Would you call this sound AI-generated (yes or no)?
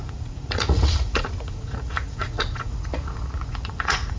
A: yes